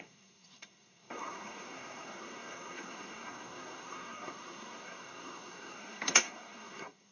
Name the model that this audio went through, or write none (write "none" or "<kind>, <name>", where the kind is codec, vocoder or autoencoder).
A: codec, SNAC